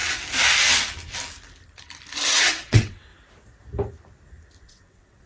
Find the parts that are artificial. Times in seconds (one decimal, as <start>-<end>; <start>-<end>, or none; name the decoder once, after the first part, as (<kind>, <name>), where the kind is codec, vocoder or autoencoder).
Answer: 2.4-3.1 (vocoder, WaveNeXt); 4.6-5.3